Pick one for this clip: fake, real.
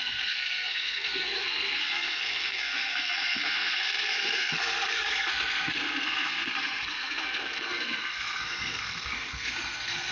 fake